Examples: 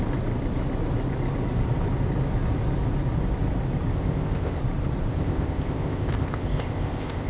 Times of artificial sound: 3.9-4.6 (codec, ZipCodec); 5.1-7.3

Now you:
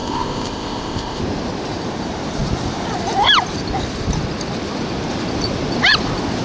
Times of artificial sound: 0.0-1.2 (codec, ZipCodec)

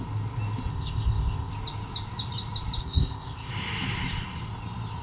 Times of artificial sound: 0.7-1.5 (codec, ZipCodec); 2.8-3.5